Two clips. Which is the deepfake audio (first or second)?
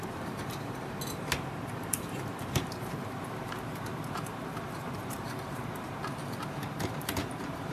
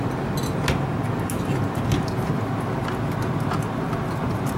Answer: first